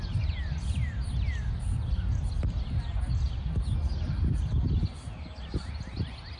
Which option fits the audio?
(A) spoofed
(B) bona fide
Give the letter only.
B